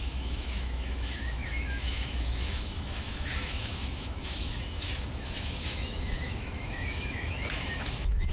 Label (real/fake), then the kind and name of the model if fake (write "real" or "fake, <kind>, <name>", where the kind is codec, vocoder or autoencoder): fake, autoencoder, DAC-VAE